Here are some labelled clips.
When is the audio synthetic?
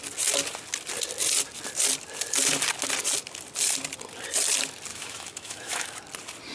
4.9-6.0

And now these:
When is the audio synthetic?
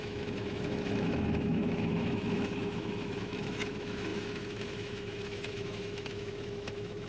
0.0-7.1